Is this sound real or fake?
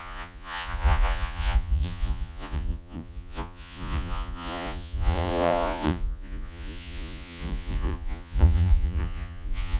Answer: fake